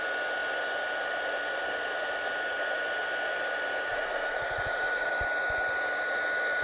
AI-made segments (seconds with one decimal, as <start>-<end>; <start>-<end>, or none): 3.9-5.1